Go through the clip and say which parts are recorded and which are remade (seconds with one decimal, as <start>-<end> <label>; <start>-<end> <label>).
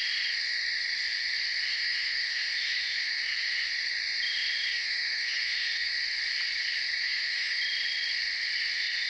0.0-1.7 recorded; 1.7-3.2 remade; 3.2-4.7 recorded; 4.7-5.9 remade; 5.9-7.0 recorded; 7.0-7.6 remade; 7.6-9.1 recorded